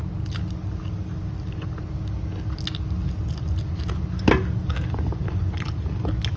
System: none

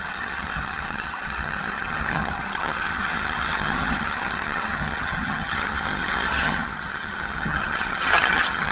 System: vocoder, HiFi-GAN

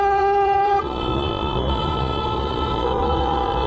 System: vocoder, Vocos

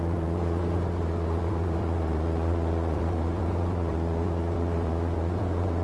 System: vocoder, Vocos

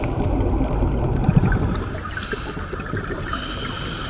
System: none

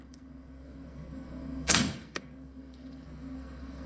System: codec, SNAC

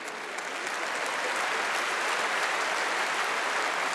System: none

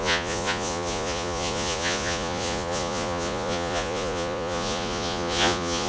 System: vocoder, Vocos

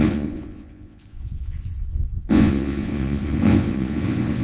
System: vocoder, Vocos